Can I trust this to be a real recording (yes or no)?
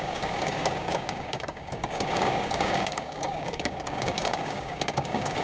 no